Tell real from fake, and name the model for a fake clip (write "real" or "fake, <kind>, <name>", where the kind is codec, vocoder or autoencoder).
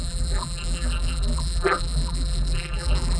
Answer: fake, vocoder, BigVGAN v2